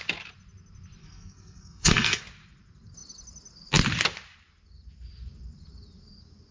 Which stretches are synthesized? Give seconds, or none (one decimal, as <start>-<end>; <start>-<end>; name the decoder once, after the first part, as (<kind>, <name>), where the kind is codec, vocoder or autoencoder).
1.0-2.2 (codec, SNAC)